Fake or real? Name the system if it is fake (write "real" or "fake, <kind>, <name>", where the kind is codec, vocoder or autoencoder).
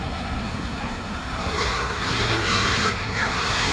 fake, codec, SNAC